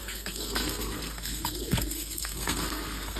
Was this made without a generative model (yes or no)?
no